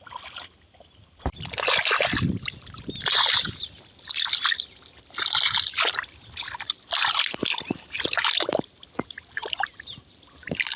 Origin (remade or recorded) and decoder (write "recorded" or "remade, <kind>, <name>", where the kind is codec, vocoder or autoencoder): recorded